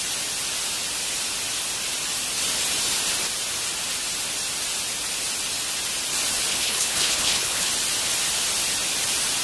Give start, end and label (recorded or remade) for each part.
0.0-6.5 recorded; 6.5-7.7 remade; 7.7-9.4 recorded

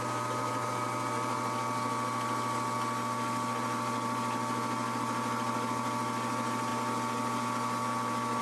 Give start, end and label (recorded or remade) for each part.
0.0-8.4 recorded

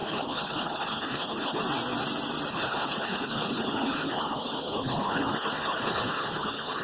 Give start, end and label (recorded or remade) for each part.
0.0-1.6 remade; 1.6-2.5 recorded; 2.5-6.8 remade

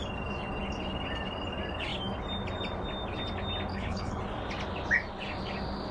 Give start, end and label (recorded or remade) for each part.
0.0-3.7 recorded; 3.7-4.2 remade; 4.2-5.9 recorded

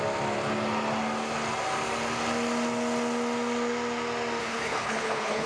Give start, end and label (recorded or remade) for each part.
0.0-4.4 recorded; 4.4-5.5 remade